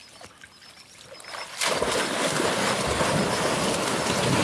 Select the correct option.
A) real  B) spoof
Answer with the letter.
A